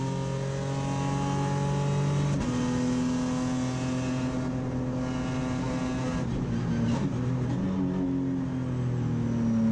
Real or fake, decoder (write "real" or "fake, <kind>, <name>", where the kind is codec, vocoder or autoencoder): real